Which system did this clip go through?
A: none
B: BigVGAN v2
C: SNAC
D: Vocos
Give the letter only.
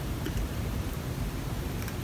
B